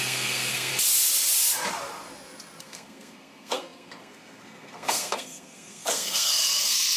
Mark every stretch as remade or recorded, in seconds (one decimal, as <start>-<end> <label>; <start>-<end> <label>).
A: 0.0-0.7 remade; 0.7-2.6 recorded; 2.6-7.0 remade